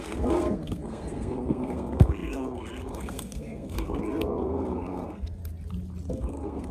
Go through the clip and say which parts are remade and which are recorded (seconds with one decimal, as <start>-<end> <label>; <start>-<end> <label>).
0.0-5.4 remade; 5.4-6.1 recorded; 6.1-6.7 remade

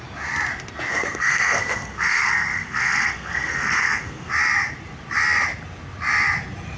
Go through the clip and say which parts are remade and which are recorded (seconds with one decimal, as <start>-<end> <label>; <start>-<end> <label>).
0.0-0.9 recorded; 0.9-4.3 remade; 4.3-6.8 recorded

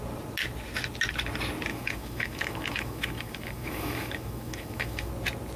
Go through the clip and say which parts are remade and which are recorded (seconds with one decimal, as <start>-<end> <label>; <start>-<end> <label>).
0.0-1.7 recorded; 1.7-5.1 remade; 5.1-5.6 recorded

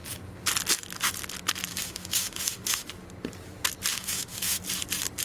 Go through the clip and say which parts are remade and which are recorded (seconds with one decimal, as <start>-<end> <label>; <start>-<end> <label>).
0.0-1.7 recorded; 1.7-2.9 remade; 2.9-3.9 recorded; 3.9-4.6 remade; 4.6-5.2 recorded

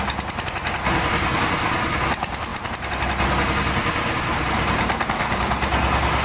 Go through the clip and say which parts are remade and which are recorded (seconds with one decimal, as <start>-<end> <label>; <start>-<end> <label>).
0.0-6.2 recorded